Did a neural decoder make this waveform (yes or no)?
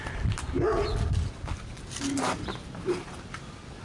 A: no